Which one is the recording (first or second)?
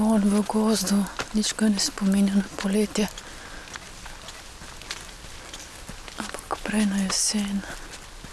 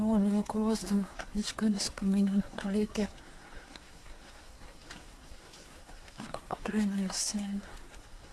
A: first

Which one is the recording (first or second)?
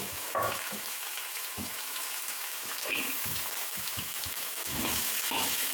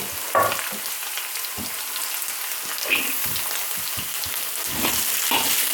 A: second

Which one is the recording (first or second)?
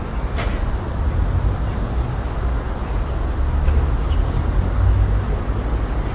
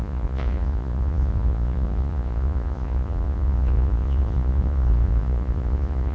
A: first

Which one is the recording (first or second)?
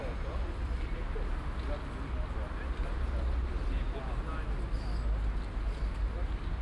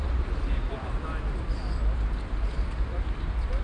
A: first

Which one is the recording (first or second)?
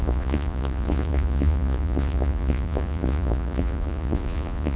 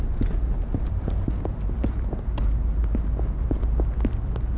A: second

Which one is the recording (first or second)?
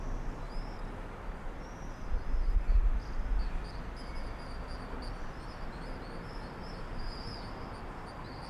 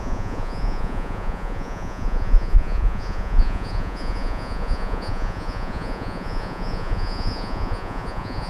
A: first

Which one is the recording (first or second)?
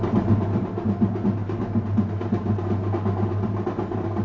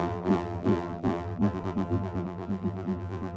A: first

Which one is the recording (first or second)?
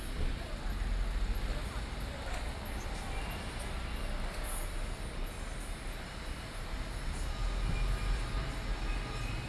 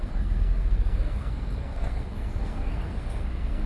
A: first